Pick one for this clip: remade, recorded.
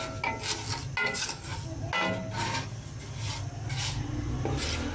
recorded